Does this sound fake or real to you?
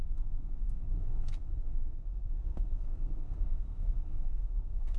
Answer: fake